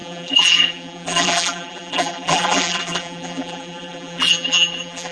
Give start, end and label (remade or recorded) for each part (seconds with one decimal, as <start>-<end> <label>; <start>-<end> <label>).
0.0-5.1 remade